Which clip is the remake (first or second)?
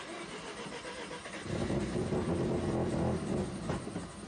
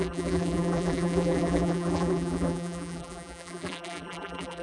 second